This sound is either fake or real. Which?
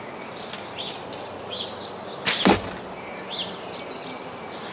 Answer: real